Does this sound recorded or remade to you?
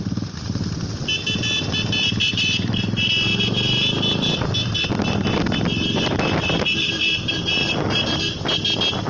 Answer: recorded